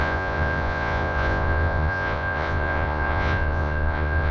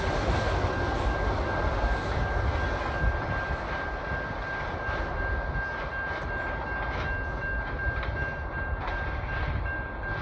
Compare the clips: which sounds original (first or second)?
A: second